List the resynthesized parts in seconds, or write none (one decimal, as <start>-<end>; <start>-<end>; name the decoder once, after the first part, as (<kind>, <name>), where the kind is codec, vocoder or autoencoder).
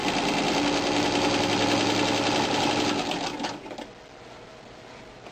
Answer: none